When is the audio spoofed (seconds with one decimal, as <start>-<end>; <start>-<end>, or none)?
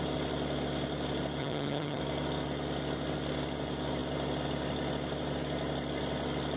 1.4-2.0